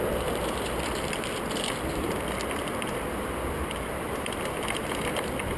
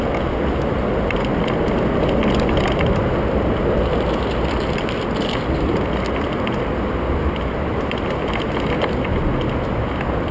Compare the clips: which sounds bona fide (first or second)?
second